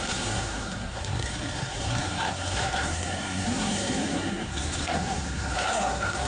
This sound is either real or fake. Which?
fake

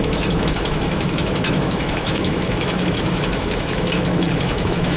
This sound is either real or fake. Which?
fake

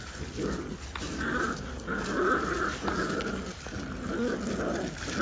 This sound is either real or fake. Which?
real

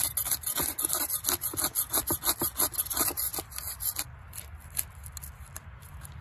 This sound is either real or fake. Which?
real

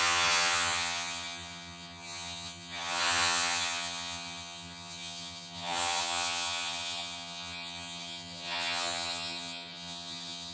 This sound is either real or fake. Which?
fake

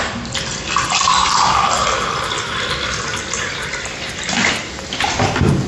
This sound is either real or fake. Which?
real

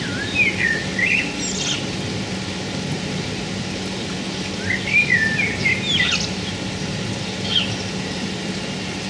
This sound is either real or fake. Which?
real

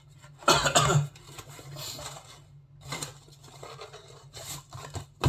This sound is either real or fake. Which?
real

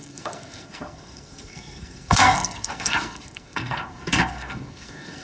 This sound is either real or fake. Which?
fake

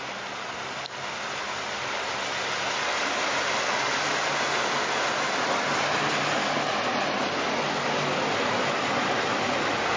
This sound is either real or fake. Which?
real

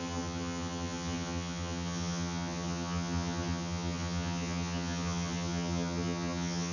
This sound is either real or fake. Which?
fake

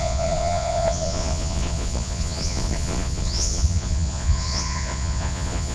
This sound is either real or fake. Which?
fake